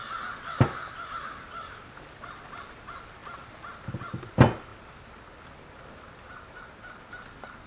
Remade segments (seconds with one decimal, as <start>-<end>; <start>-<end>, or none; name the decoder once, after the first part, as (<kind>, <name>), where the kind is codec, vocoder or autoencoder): none